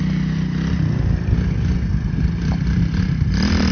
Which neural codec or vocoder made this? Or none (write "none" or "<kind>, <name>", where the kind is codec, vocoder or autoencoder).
none